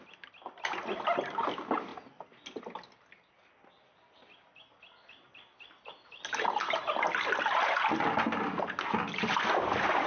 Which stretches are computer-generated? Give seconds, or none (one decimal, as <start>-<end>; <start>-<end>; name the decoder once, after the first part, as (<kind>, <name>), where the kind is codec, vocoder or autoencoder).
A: none